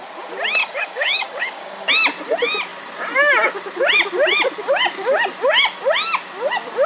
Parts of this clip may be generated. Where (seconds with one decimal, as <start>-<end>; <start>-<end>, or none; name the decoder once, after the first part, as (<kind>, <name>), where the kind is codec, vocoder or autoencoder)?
0.6-1.9 (codec, DAC)